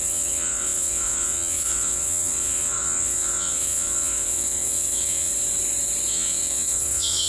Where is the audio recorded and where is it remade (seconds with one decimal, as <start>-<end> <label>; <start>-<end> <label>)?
0.0-5.3 remade; 5.3-6.1 recorded; 6.1-7.3 remade